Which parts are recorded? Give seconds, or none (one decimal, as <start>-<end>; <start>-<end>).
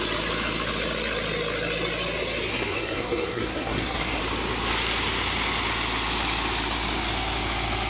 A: 0.0-2.5; 4.2-7.9